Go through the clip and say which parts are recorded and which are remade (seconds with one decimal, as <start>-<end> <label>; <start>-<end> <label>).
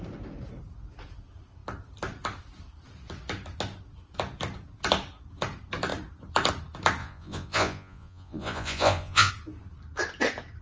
0.0-7.0 recorded; 7.0-9.3 remade; 9.3-10.6 recorded